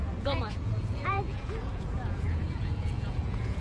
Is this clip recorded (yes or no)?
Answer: no